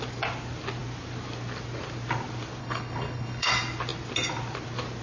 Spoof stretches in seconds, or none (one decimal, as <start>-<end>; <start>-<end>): 2.6-3.5